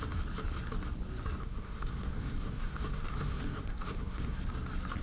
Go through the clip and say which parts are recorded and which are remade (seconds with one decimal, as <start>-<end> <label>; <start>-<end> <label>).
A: 0.0-1.4 recorded; 1.4-4.4 remade; 4.4-5.0 recorded